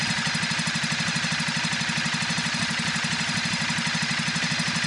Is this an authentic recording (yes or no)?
yes